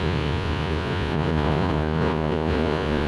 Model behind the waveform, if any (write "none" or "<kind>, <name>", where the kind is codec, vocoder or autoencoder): vocoder, Vocos